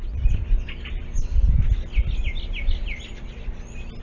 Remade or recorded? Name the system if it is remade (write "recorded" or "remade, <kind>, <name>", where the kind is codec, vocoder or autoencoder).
recorded